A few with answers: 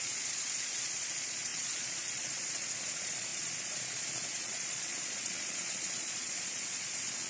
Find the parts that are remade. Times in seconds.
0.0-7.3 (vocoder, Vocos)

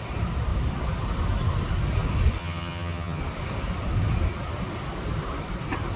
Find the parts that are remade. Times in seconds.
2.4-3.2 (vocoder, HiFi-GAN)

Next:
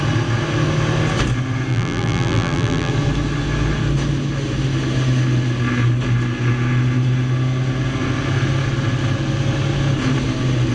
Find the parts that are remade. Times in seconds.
1.7-2.9 (vocoder, BigVGAN v2)

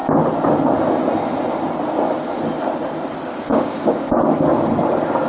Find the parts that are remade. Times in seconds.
3.5-4.1 (codec, DAC)

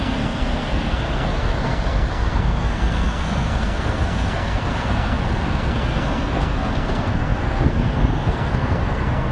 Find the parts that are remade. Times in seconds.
0.0-9.3 (codec, SNAC)

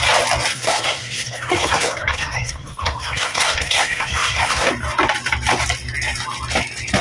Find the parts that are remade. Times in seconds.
0.5-4.7 (codec, SNAC)

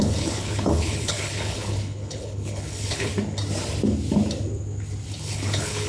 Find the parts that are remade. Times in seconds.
0.0-3.1 (codec, HILCodec); 5.2-5.9